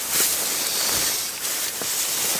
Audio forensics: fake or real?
real